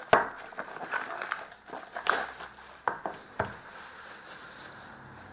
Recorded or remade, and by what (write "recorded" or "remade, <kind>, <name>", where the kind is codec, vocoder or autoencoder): recorded